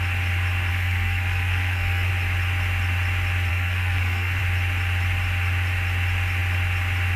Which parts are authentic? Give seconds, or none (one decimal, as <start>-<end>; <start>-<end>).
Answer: 0.0-0.7; 2.1-3.5; 4.4-7.2

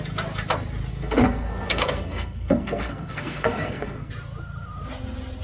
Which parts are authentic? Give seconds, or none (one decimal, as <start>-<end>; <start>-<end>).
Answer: 0.0-0.9; 4.1-5.4

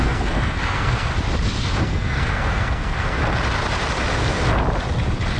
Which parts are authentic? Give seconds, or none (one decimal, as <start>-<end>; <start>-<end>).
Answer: 1.1-1.8; 3.2-5.4

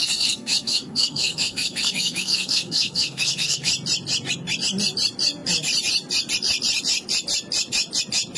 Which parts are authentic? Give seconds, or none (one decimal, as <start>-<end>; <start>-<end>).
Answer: 3.7-8.4

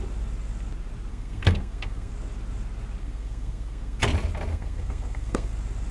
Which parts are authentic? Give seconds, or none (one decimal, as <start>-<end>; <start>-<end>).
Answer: 0.0-1.1; 2.1-3.0; 4.0-4.5; 5.5-5.9

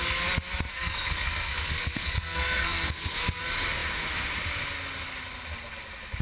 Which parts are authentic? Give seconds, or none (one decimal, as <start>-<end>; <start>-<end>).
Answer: 0.0-0.7; 3.4-6.2